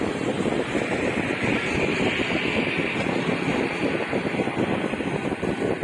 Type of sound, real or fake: real